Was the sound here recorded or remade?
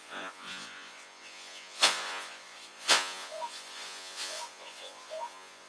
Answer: remade